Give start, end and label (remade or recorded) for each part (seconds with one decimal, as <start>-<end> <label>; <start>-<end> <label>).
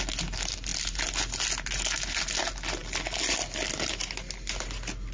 0.0-5.1 recorded